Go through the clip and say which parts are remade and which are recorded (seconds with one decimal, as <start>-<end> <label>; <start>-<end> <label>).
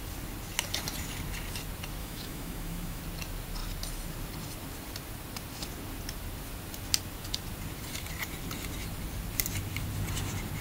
0.0-2.0 recorded; 2.0-3.0 remade; 3.0-10.6 recorded